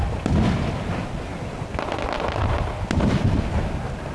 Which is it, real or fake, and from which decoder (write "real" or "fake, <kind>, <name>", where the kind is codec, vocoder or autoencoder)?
real